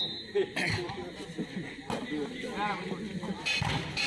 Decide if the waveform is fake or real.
real